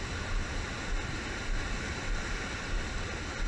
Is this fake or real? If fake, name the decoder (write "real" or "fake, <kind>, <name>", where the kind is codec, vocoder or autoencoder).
real